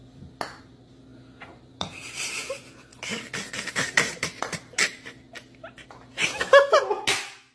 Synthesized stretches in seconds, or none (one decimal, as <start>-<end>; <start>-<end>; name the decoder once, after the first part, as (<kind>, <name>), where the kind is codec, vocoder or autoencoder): 1.1-2.5 (vocoder, BigVGAN v2); 2.9-6.4

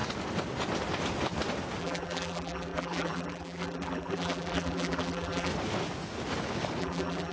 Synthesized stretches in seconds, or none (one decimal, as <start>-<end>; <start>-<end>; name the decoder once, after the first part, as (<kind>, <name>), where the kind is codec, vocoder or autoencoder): 1.8-5.5 (vocoder, BigVGAN v2); 6.8-7.3

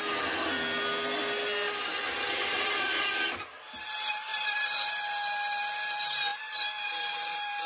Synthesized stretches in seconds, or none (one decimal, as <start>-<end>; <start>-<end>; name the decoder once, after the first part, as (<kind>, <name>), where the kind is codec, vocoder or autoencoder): 4.3-4.9 (vocoder, BigVGAN v2)

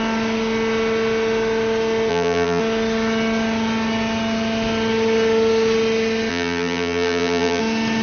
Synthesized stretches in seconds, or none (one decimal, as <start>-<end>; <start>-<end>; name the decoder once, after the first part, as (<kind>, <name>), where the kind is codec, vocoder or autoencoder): 2.1-2.6 (vocoder, BigVGAN v2); 6.3-7.6

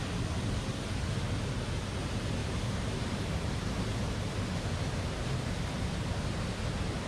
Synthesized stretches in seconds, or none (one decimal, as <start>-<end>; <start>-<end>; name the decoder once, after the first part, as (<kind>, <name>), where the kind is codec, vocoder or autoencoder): 0.7-1.2 (vocoder, BigVGAN v2); 2.4-3.9; 5.2-5.9

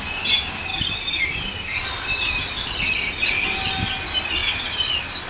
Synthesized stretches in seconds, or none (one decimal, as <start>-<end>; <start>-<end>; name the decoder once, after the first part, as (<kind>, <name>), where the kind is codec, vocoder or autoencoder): 0.7-3.9 (vocoder, BigVGAN v2); 4.4-5.3

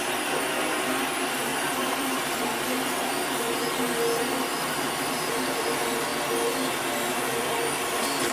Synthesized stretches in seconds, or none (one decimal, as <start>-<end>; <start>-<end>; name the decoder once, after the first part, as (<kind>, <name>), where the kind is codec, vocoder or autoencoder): 1.5-2.6 (vocoder, BigVGAN v2); 4.5-5.1